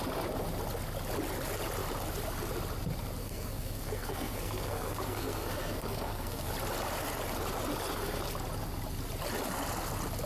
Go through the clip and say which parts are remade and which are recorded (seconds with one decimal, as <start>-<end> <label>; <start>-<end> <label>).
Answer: 0.0-3.2 recorded; 3.2-6.5 remade; 6.5-10.3 recorded